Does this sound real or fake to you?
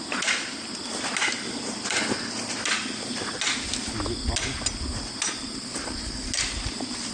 real